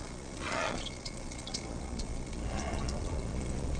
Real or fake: fake